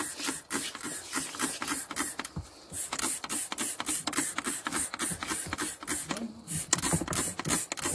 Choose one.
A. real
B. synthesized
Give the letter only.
A